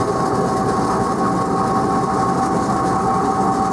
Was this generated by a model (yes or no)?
no